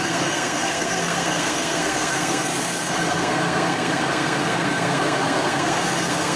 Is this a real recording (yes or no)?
no